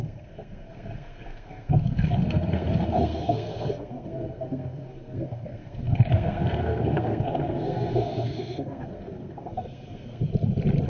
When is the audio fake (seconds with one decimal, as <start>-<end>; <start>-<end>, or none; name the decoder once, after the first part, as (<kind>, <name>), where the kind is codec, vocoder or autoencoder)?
0.0-10.3 (codec, SNAC)